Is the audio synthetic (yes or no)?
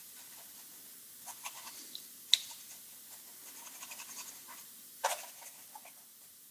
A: no